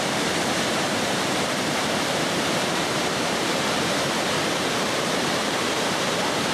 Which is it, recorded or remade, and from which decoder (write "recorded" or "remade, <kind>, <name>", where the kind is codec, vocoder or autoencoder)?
remade, vocoder, BigVGAN v2